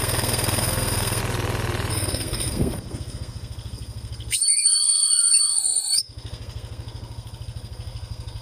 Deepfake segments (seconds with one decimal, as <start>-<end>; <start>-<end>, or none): 0.0-1.2; 1.9-8.4